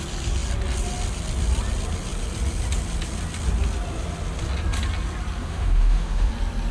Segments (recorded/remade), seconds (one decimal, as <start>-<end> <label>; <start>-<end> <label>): 0.0-5.4 recorded; 5.4-6.3 remade; 6.3-6.7 recorded